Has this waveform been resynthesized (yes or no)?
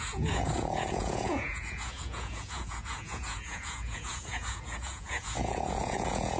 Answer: yes